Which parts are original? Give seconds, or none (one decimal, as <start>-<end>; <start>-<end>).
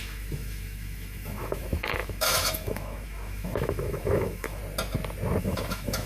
4.6-5.4